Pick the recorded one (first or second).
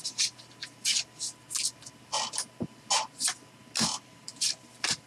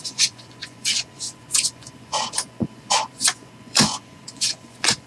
first